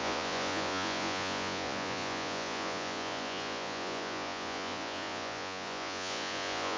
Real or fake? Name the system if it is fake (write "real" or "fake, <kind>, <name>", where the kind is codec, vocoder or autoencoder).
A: fake, vocoder, Vocos